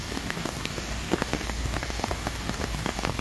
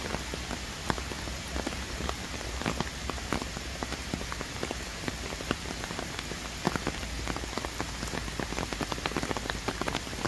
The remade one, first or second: first